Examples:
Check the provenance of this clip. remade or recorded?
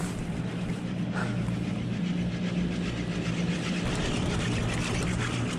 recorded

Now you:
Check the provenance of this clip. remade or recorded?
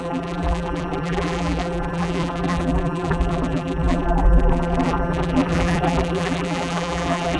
remade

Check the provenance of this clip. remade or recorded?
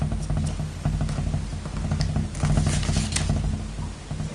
recorded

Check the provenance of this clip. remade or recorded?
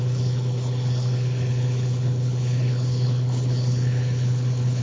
remade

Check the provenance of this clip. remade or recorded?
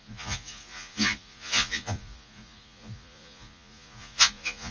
remade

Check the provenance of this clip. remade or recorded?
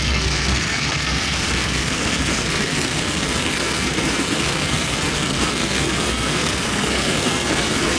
remade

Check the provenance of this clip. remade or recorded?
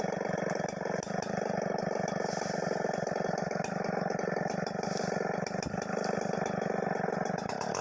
recorded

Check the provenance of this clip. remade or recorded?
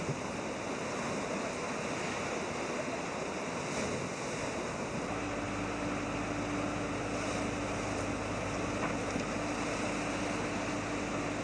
recorded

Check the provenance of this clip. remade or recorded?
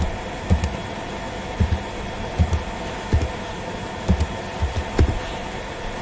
recorded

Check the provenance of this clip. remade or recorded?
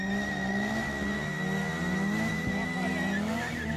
recorded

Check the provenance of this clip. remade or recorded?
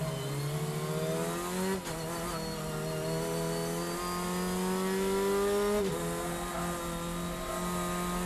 recorded